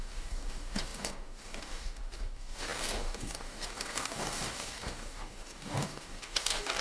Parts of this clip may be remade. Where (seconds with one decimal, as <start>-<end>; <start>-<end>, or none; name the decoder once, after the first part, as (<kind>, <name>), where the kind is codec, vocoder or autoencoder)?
0.0-6.8 (codec, DAC)